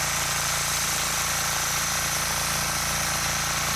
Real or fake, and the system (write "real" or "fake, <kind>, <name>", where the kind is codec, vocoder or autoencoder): real